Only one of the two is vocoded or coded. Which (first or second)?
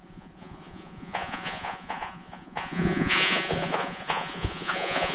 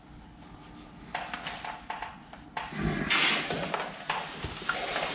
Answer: first